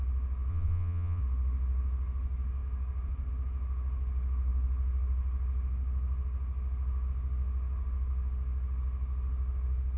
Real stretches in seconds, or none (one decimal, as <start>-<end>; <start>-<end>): 0.0-0.5; 1.2-10.0